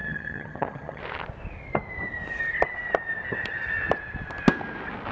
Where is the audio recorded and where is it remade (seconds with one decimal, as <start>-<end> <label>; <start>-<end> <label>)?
0.0-1.0 remade; 1.0-5.1 recorded